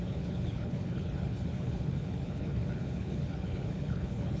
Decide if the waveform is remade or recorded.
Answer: remade